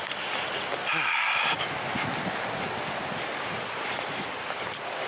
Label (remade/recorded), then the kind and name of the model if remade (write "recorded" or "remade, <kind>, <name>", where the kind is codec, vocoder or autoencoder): recorded